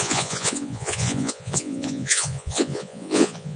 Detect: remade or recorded remade